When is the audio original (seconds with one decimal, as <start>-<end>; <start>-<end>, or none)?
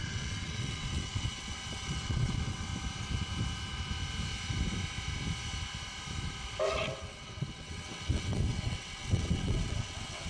2.7-6.7